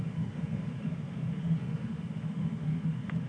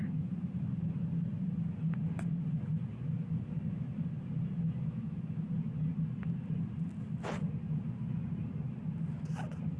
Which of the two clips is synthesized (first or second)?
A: first